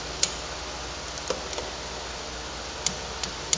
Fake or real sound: real